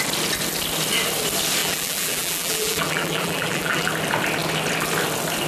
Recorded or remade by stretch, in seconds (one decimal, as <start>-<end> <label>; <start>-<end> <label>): 0.0-1.6 recorded; 1.6-3.9 remade; 3.9-5.5 recorded